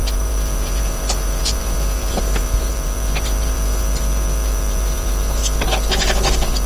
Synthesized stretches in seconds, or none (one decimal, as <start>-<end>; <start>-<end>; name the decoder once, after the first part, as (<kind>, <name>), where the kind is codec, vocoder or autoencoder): 0.0-5.4 (vocoder, BigVGAN v2); 6.3-6.7